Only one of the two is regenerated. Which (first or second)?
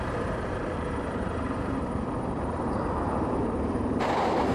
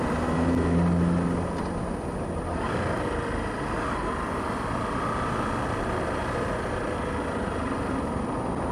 first